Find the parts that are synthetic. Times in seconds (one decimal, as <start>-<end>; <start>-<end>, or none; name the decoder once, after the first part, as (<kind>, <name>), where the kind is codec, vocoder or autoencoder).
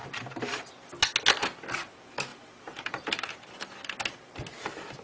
0.0-0.7 (vocoder, BigVGAN v2); 2.3-3.6